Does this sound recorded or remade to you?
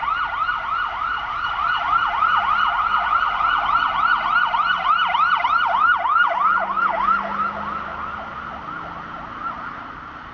recorded